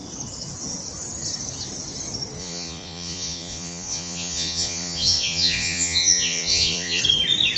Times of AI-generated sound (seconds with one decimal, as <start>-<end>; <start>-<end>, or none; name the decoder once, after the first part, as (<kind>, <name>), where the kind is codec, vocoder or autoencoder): 2.4-7.0 (vocoder, Vocos)